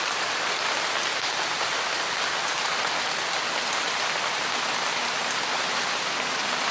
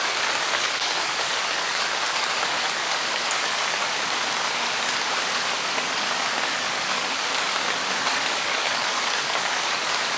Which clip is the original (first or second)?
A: first